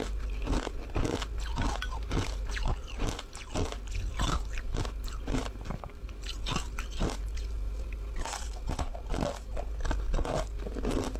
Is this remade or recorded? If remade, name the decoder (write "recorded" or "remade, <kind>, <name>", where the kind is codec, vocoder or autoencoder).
recorded